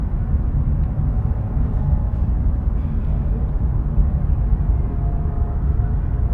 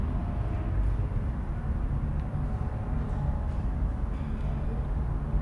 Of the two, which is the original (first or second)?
second